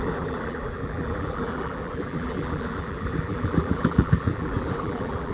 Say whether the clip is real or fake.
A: fake